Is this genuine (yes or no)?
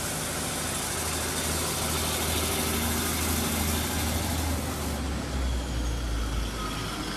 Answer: yes